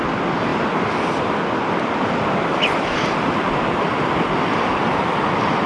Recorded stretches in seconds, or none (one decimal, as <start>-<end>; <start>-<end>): 0.0-5.7